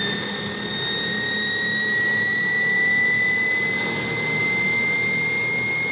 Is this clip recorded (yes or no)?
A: yes